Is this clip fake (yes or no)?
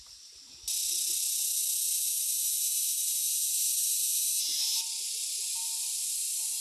no